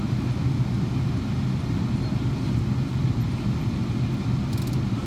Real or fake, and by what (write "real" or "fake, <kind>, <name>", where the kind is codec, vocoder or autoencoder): real